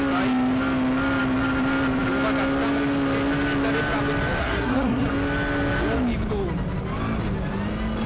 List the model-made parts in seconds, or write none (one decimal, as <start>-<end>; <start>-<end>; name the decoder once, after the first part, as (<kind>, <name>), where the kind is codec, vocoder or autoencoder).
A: 4.4-5.1 (codec, SNAC)